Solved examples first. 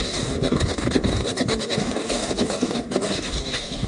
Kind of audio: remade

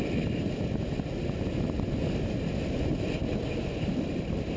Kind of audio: recorded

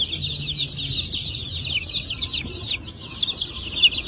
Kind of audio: recorded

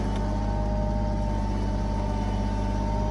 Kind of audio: recorded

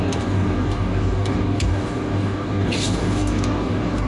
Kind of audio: remade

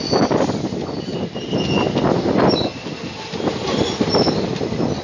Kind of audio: recorded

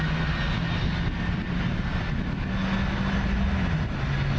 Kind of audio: recorded